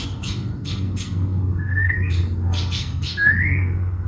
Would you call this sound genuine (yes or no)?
no